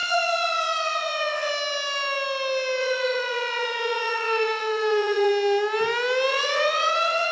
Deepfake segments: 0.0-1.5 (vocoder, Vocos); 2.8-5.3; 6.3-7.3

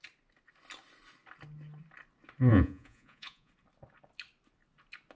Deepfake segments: 2.5-3.5 (vocoder, Vocos)

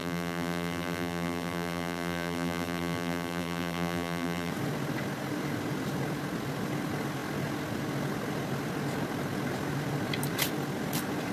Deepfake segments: 0.0-4.5 (vocoder, BigVGAN v2)

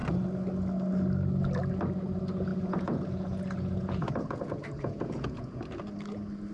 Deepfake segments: 2.5-5.6 (vocoder, Vocos)

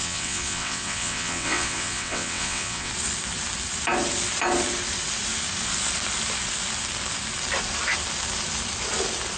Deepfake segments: 0.0-2.9 (vocoder, WaveNeXt)

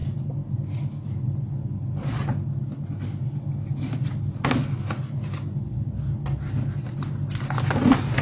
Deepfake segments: none

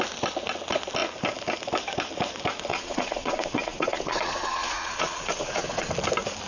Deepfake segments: 2.7-5.9 (vocoder, Vocos)